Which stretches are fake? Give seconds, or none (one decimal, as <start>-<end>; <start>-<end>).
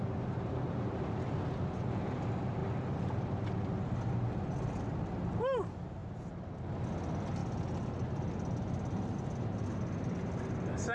none